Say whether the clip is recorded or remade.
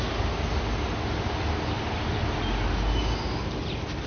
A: recorded